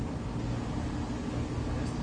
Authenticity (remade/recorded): recorded